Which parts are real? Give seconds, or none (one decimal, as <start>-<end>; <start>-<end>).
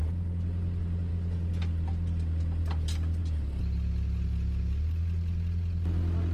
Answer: 0.0-6.3